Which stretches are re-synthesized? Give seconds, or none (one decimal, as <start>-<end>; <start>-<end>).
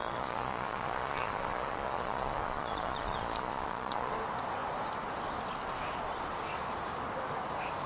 0.0-4.1